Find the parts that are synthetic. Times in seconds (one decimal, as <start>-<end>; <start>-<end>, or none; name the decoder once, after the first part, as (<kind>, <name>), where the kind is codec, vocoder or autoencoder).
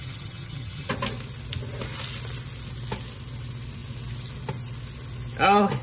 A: 0.0-0.9 (vocoder, HiFi-GAN)